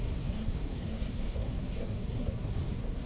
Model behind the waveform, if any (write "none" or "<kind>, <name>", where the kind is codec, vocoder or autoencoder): codec, SNAC